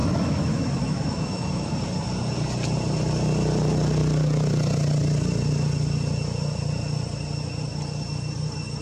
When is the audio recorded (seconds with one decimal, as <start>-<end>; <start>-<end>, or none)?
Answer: 1.7-8.8

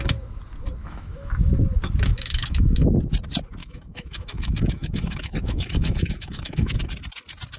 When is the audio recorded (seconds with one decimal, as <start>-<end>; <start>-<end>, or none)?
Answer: 0.0-0.8; 1.3-2.1; 2.9-3.6; 6.8-7.6